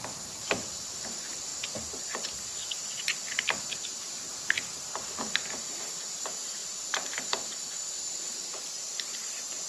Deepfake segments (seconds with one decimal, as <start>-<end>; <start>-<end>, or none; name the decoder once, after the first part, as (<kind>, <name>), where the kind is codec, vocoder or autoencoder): 0.0-1.5 (vocoder, BigVGAN v2); 4.0-9.7